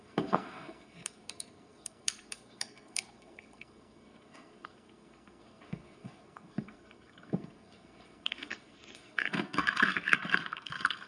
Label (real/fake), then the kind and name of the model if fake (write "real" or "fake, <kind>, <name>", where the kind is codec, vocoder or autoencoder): fake, codec, SNAC